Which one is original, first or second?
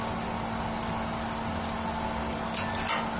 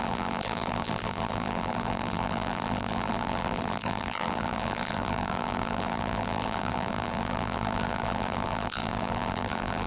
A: first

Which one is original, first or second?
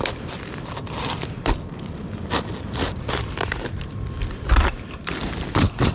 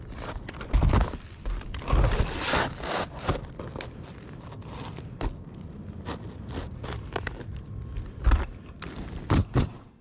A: second